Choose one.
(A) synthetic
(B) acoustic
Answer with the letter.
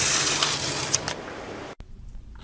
A